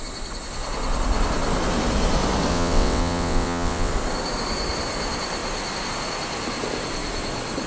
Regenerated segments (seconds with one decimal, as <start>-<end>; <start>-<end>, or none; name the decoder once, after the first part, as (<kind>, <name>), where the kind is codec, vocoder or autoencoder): 2.5-3.9 (vocoder, WaveNeXt)